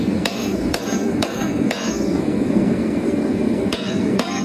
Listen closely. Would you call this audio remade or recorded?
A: remade